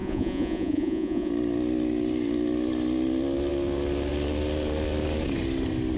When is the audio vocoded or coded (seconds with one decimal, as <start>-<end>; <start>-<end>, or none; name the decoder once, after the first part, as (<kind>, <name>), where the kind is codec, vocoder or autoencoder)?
0.0-1.3 (vocoder, Vocos)